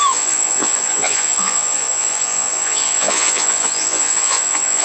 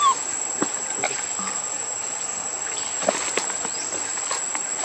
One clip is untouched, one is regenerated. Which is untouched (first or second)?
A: second